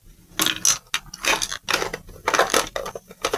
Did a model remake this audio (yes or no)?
no